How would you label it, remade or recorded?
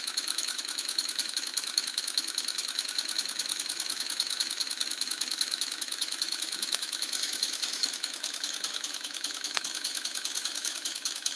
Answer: remade